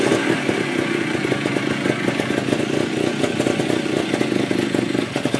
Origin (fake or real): fake